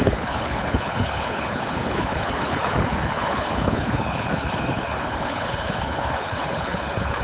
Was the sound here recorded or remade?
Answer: remade